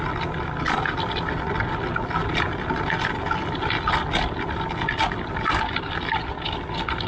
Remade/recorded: recorded